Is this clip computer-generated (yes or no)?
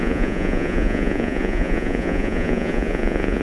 yes